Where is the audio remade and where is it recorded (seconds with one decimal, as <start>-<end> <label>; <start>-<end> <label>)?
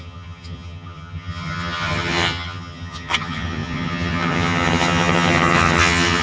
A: 0.0-6.2 remade